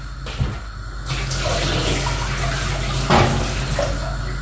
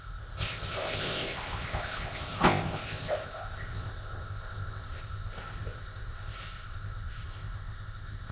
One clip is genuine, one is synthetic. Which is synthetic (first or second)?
second